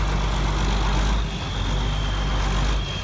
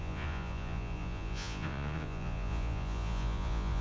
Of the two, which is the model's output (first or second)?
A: second